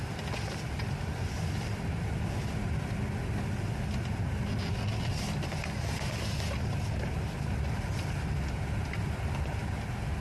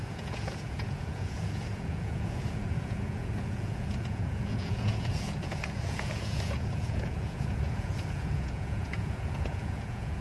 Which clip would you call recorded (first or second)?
first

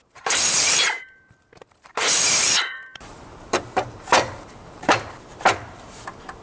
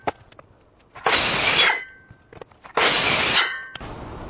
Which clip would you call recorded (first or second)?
second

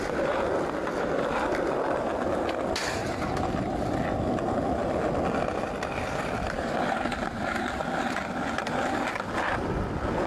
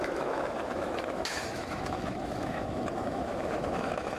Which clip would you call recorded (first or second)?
first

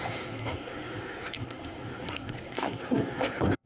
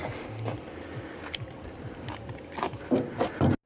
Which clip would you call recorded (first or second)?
second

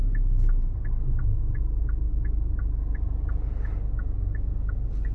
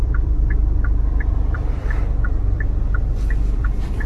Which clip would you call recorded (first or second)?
first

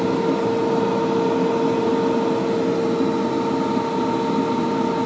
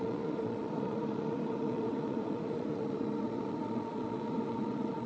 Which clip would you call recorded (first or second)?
first